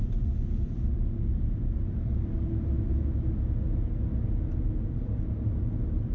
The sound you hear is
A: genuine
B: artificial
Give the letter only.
A